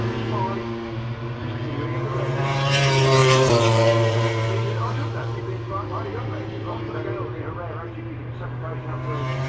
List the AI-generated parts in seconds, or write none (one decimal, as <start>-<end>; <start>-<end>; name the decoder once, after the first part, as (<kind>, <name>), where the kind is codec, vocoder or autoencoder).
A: 3.2-5.4 (vocoder, BigVGAN v2); 6.1-6.8